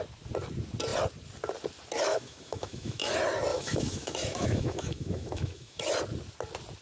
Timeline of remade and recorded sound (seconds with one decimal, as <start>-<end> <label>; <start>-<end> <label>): 0.0-2.1 recorded; 2.1-3.1 remade; 3.1-3.5 recorded; 3.5-5.8 remade; 5.8-6.8 recorded